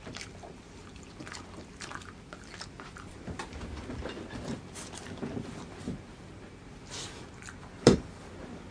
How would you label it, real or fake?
fake